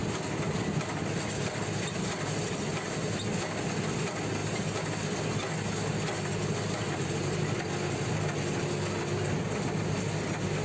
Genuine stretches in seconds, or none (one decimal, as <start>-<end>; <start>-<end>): 0.0-10.6